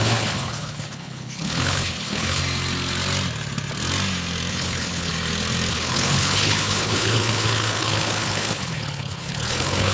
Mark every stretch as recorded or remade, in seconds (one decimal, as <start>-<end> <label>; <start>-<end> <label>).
0.0-2.4 remade; 2.4-4.5 recorded; 4.5-5.1 remade; 5.1-5.7 recorded; 5.7-9.9 remade

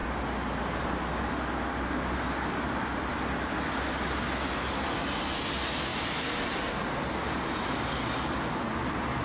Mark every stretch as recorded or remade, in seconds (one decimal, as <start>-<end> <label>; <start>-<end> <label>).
0.0-9.2 recorded

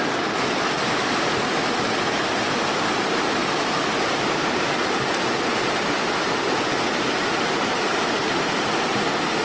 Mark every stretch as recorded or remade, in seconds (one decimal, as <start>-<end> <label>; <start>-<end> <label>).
0.0-9.4 recorded

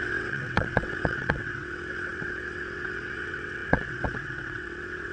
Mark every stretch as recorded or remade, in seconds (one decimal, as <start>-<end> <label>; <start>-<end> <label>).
0.0-5.1 remade

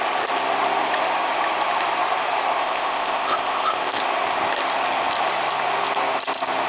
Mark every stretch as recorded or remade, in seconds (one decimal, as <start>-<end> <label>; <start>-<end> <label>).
0.0-2.6 recorded; 2.6-4.0 remade; 4.0-6.7 recorded

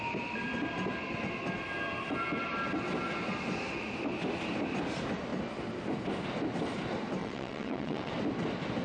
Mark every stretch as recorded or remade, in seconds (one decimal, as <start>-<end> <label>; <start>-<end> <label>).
0.0-7.2 recorded; 7.2-8.1 remade; 8.1-8.8 recorded

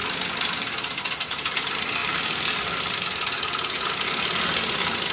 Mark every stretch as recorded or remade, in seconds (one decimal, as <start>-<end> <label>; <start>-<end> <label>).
0.0-5.1 recorded